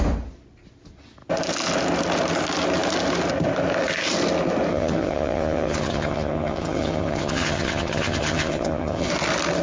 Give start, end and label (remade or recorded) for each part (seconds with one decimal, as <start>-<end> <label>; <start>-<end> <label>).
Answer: 0.0-4.7 recorded; 4.7-9.1 remade; 9.1-9.6 recorded

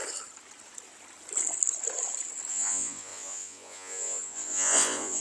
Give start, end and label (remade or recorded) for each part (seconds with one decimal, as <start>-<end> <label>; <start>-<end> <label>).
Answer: 0.0-2.5 recorded; 2.5-5.2 remade